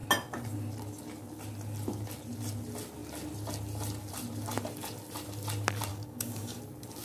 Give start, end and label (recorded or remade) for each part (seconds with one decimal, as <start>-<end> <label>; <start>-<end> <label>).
0.0-5.9 recorded; 5.9-6.6 remade; 6.6-7.0 recorded